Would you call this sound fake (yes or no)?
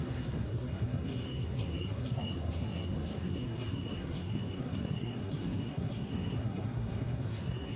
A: yes